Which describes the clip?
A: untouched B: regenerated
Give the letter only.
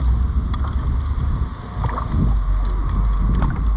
A